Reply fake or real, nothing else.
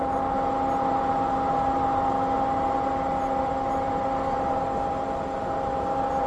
real